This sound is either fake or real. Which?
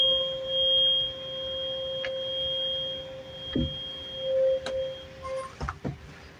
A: real